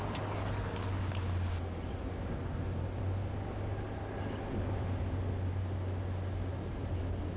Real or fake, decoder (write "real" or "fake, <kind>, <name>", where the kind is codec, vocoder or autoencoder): real